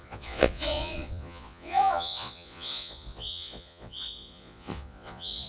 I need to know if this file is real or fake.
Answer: fake